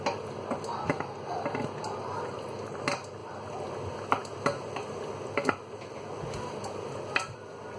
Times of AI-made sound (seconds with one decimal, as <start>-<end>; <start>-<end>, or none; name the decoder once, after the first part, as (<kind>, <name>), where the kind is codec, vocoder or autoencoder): none